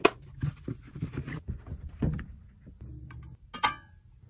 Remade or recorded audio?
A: recorded